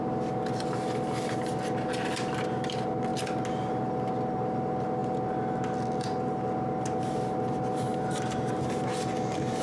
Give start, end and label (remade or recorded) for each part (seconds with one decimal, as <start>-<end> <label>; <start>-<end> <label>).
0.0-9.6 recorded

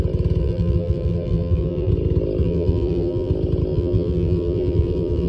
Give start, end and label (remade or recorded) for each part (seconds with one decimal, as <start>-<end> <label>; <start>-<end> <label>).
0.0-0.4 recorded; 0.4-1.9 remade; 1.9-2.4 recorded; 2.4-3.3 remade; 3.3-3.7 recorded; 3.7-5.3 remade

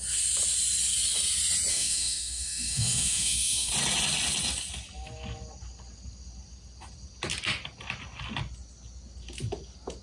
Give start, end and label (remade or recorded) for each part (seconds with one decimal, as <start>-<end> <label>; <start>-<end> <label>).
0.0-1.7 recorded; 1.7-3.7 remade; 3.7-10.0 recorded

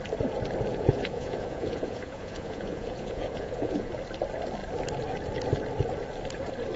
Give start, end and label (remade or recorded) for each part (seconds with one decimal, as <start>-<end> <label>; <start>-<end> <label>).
0.0-0.7 recorded; 0.7-3.9 remade; 3.9-6.8 recorded

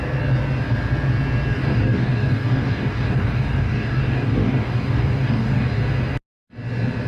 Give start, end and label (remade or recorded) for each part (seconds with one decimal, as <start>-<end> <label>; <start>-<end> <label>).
0.0-1.5 recorded; 1.5-5.8 remade; 5.8-7.1 recorded

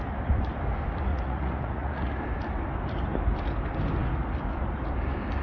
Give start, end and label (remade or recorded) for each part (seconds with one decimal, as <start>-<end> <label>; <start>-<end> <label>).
0.0-1.1 recorded; 1.1-2.1 remade; 2.1-5.4 recorded